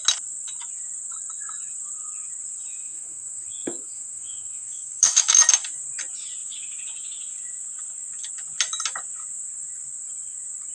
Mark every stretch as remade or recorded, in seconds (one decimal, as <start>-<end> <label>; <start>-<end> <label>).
0.0-2.8 recorded; 2.8-5.5 remade; 5.5-10.7 recorded